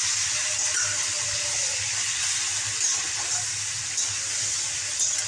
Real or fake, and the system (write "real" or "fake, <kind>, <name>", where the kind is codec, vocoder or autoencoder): real